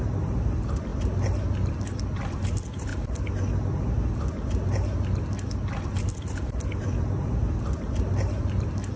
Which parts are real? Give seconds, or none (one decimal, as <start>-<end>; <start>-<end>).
0.9-1.7; 2.9-6.2